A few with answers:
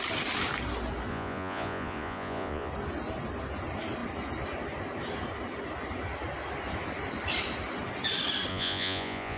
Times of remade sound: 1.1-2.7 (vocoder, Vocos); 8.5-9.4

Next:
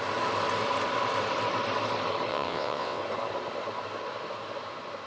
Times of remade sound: 2.3-3.0 (vocoder, WaveNeXt)

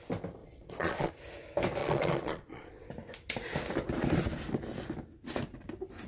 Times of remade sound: 0.4-1.1 (vocoder, Vocos); 1.8-2.9

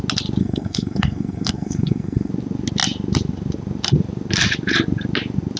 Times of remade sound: 0.4-2.3 (codec, SNAC)